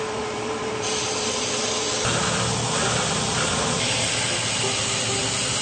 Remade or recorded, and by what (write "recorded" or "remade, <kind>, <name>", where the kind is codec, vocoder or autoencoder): recorded